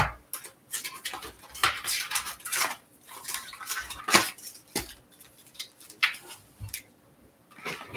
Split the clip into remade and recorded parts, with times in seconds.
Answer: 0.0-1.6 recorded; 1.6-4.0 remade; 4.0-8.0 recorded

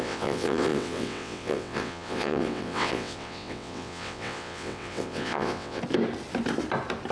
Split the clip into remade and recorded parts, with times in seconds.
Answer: 0.0-5.8 remade; 5.8-7.1 recorded

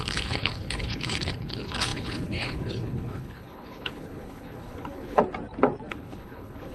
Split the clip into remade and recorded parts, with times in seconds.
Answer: 0.0-5.2 remade; 5.2-5.9 recorded; 5.9-6.7 remade

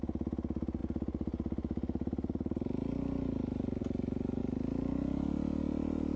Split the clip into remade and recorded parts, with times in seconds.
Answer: 0.0-6.2 recorded

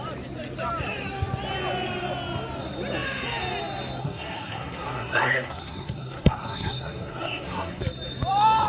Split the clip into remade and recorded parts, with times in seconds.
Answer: 0.0-4.0 recorded; 4.0-7.8 remade; 7.8-8.7 recorded